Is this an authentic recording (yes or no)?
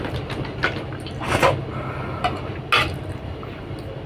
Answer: yes